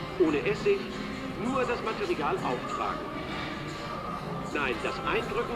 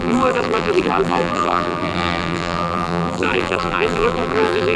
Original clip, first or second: first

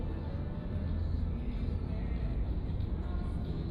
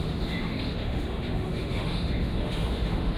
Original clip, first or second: first